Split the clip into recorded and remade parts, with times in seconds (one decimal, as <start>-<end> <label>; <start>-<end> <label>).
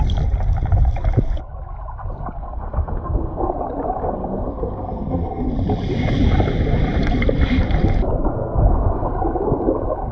0.0-2.4 recorded; 2.4-3.5 remade; 3.5-4.0 recorded; 4.0-5.5 remade; 5.5-8.3 recorded; 8.3-9.1 remade; 9.1-10.1 recorded